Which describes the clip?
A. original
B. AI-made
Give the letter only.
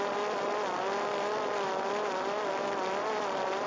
B